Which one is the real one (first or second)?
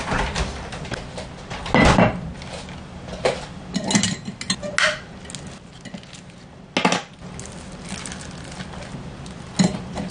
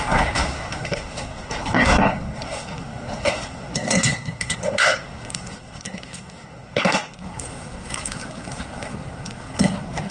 first